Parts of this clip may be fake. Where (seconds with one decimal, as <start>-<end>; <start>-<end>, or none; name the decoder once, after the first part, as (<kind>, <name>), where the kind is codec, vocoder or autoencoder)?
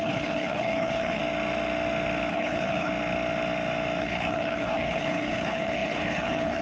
0.0-1.2 (codec, HILCodec); 2.3-2.9; 4.0-6.6